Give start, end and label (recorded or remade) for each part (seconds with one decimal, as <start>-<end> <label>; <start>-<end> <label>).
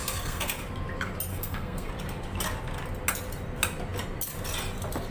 0.0-0.5 remade; 0.5-1.3 recorded; 1.3-1.9 remade; 1.9-5.1 recorded